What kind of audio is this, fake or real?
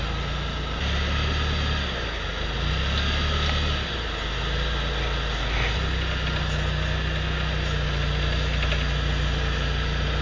real